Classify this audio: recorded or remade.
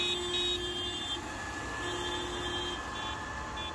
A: recorded